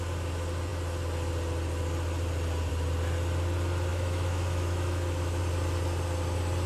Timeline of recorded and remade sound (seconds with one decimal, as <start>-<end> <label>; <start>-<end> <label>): 0.0-3.9 recorded; 3.9-5.4 remade; 5.4-6.7 recorded